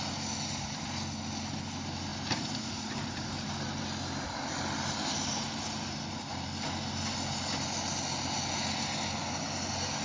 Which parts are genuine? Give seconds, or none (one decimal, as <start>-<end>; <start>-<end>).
0.0-2.1; 3.3-10.0